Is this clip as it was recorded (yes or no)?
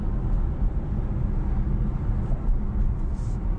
yes